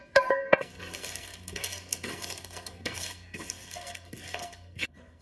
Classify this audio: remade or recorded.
remade